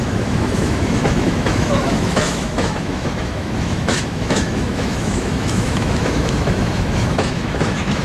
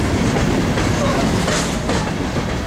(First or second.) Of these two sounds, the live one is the second